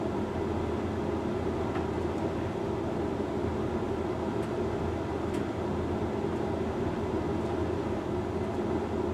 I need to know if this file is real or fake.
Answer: real